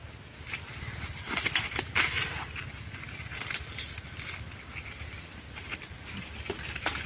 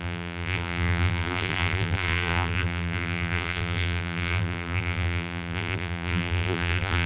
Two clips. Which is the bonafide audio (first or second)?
first